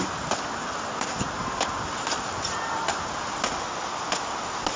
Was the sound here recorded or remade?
recorded